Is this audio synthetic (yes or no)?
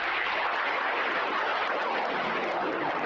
no